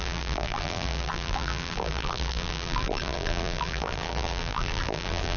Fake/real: fake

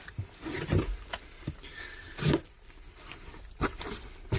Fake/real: real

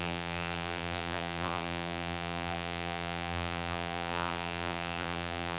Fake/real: fake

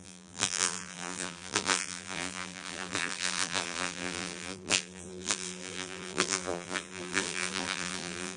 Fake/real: fake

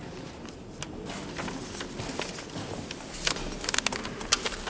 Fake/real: real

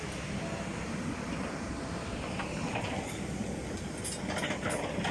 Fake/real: real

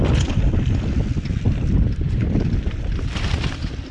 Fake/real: fake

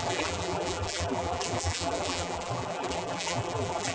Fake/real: fake